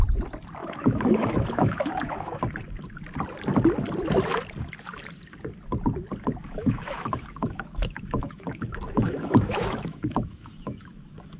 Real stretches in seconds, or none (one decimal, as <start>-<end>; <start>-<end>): 0.0-0.6; 2.4-6.4